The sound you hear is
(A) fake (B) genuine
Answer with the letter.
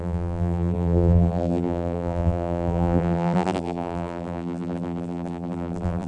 A